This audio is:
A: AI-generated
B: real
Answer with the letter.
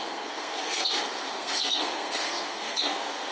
A